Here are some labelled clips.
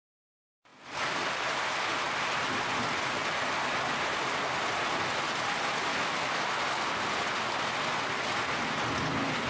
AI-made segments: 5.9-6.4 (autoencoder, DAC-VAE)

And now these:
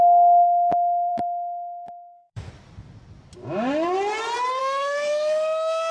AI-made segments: 1.1-2.5 (autoencoder, DAC-VAE); 4.6-5.9

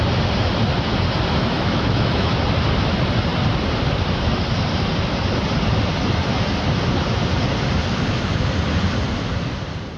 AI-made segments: 1.4-2.3 (autoencoder, DAC-VAE)

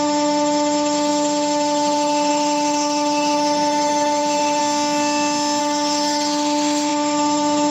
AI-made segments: 0.0-4.6 (autoencoder, DAC-VAE); 5.6-7.7